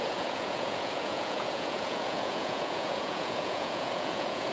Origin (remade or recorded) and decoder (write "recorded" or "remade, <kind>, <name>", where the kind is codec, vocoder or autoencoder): remade, vocoder, Vocos